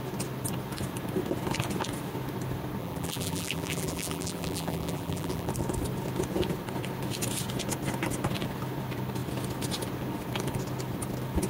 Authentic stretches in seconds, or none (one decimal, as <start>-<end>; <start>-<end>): 0.0-2.8; 5.5-11.5